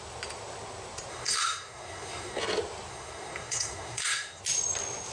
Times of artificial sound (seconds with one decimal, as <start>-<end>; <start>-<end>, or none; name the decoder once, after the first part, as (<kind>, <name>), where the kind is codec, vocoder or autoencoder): 1.1-2.4 (codec, SNAC); 2.9-4.4